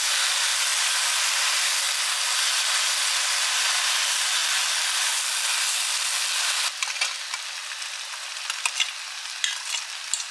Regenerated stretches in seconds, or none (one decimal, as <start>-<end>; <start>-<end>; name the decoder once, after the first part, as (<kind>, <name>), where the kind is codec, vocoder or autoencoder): none